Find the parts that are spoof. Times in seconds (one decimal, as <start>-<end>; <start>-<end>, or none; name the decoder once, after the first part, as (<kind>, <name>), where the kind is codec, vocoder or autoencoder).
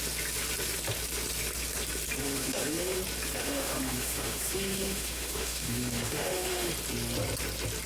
2.2-3.0 (autoencoder, DAC-VAE); 3.4-6.7